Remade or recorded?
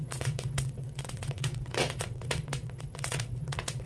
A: remade